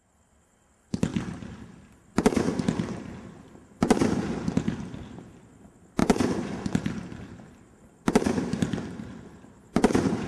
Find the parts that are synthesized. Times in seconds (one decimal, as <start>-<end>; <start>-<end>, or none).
none